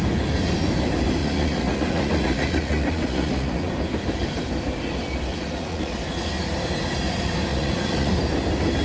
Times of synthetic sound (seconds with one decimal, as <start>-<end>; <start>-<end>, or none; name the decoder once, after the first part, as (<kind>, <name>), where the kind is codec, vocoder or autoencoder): 1.2-3.7 (vocoder, Vocos); 5.3-5.9; 7.5-8.1